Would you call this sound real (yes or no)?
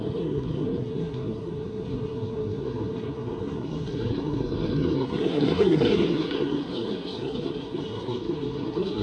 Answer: no